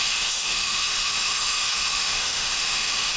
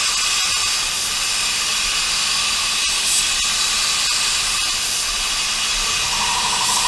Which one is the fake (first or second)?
first